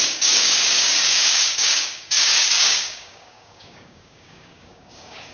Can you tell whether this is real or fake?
fake